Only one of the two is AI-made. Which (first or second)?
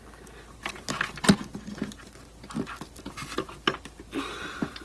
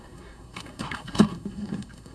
second